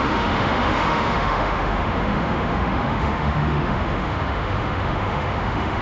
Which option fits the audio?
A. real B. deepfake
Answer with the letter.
B